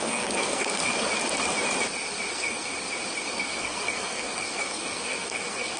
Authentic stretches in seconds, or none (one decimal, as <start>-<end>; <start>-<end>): 0.9-2.3; 2.7-3.2